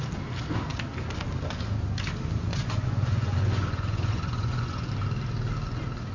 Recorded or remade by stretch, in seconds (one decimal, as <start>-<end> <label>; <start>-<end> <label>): 0.0-2.5 recorded; 2.5-4.9 remade; 4.9-6.1 recorded